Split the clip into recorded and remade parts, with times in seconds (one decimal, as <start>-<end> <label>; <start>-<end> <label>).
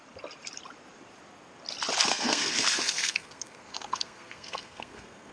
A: 0.0-2.1 recorded; 2.1-5.3 remade